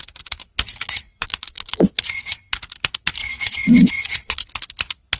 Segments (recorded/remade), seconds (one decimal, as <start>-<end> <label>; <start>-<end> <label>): 0.0-0.7 recorded; 0.7-2.3 remade; 2.3-3.2 recorded; 3.2-4.4 remade; 4.4-5.2 recorded